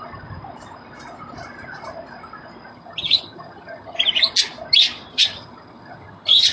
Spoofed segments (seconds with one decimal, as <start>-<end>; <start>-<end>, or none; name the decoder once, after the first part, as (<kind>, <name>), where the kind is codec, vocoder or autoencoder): 2.7-4.0 (vocoder, HiFi-GAN); 5.1-6.5